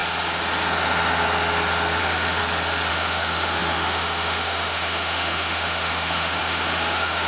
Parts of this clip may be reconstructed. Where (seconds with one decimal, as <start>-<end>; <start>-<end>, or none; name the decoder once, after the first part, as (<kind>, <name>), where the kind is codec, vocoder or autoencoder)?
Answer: 2.0-2.4 (autoencoder, DAC-VAE); 2.9-7.3